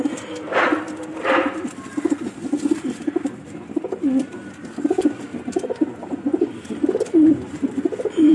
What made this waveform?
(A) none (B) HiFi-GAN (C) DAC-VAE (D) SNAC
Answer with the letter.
A